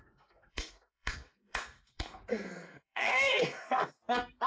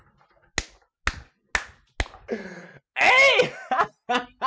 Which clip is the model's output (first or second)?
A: first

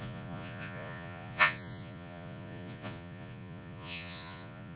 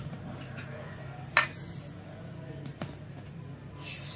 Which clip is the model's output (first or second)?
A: first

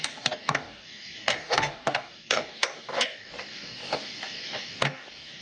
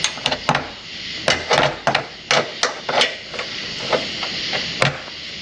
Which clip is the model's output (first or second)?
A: first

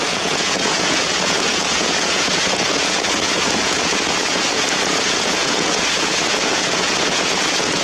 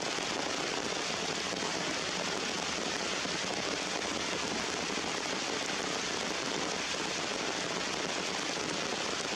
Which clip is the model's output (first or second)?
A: first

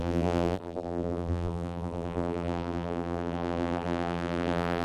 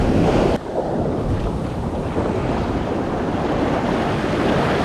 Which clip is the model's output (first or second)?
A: first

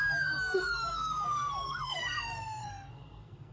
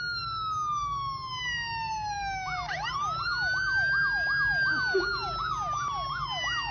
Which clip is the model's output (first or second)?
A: first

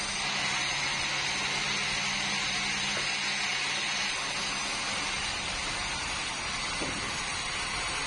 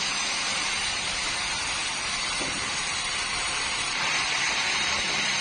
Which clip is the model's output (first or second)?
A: second